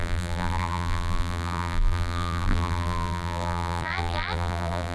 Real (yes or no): no